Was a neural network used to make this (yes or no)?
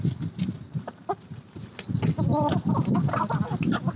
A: no